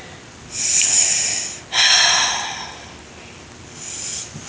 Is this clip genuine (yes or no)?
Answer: yes